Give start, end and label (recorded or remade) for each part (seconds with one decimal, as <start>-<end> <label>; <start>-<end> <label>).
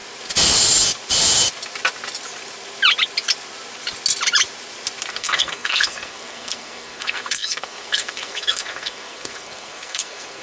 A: 0.0-5.1 recorded; 5.1-10.4 remade